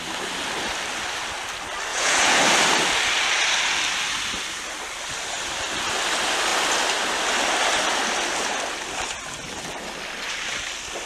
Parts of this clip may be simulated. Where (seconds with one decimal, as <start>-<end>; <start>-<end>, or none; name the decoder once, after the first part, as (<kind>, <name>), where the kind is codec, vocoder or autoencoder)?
1.9-2.4 (vocoder, Vocos)